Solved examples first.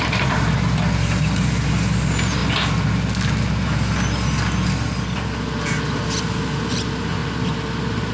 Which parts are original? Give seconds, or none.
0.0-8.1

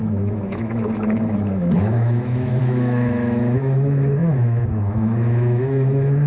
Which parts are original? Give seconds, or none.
none

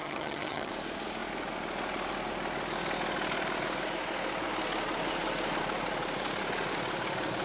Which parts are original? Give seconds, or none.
0.7-7.4

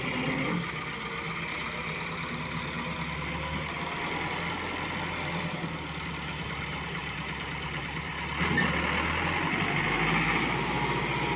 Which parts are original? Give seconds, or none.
0.0-7.0; 8.1-11.4